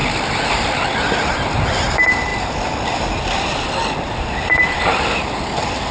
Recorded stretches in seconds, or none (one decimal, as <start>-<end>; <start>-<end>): 0.0-5.9